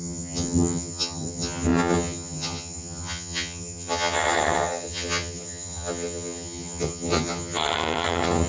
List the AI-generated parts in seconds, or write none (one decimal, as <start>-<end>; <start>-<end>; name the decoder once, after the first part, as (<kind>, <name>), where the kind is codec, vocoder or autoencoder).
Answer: 0.0-8.5 (vocoder, HiFi-GAN)